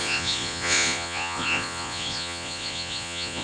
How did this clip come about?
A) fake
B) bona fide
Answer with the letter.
A